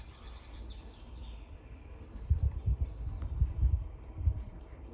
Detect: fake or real fake